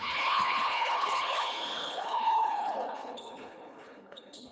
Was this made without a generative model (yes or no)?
no